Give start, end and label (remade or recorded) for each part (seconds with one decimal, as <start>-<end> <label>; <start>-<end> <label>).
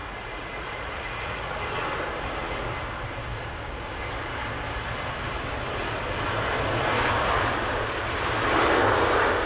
0.0-1.6 remade; 1.6-9.5 recorded